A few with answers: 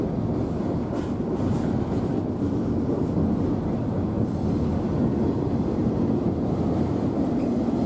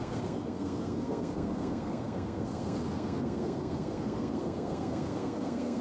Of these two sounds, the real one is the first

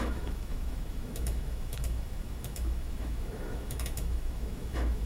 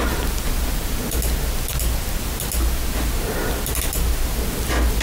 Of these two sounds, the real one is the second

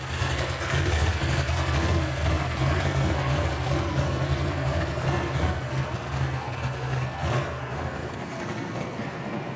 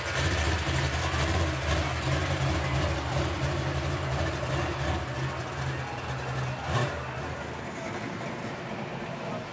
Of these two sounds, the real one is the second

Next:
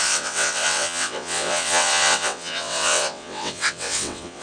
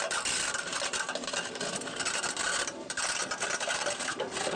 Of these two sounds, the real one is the second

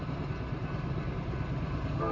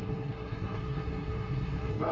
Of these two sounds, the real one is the first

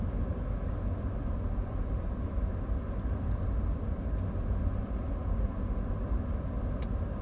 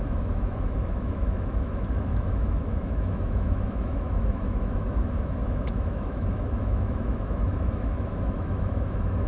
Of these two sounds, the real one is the first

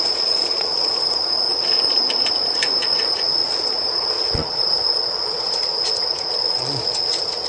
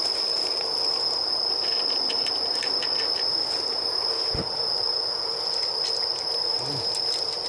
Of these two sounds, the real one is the second